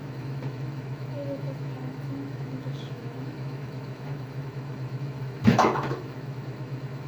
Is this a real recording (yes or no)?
no